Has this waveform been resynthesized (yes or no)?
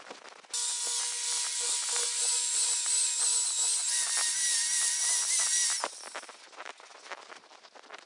no